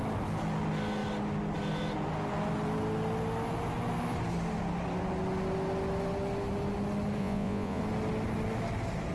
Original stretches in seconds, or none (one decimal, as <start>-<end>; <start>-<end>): 0.0-7.2; 7.8-9.1